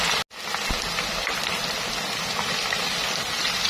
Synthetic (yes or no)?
no